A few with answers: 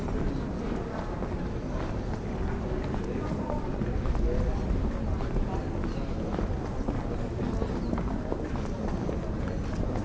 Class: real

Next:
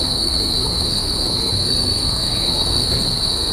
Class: fake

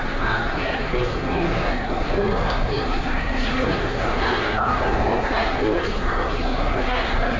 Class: fake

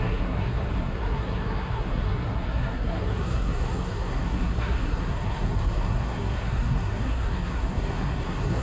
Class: fake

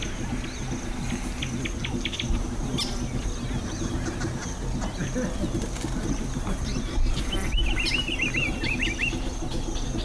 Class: real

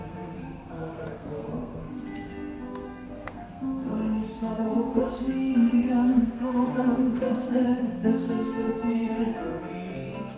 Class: fake